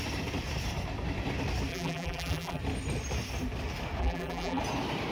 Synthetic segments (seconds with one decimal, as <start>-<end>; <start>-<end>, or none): 1.7-2.6; 4.0-4.6